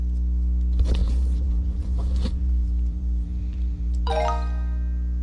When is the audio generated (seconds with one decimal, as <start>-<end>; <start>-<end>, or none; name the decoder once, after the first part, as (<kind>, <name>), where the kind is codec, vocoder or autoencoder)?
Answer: 1.0-4.1 (vocoder, BigVGAN v2)